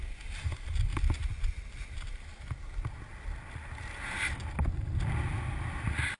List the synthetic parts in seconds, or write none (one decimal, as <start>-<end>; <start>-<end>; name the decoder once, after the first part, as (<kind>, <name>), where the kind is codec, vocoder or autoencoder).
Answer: none